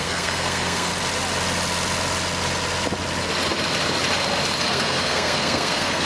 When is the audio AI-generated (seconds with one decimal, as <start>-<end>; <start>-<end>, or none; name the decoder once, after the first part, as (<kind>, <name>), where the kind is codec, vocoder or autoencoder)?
0.0-0.9 (codec, SNAC); 4.6-6.1